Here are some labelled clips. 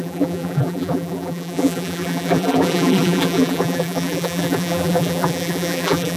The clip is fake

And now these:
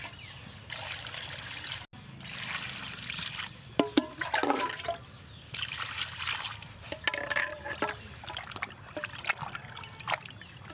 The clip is real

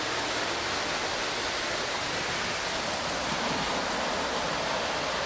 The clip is real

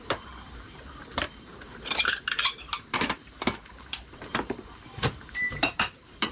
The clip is fake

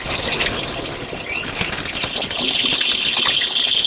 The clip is real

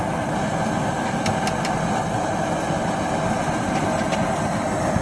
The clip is real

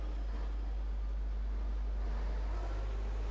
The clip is real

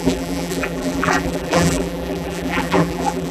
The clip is fake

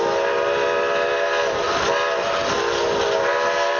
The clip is real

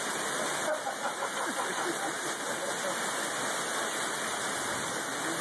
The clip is real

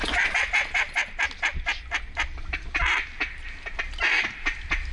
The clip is real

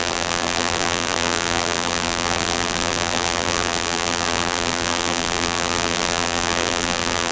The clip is fake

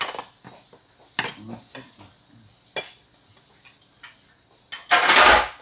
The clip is real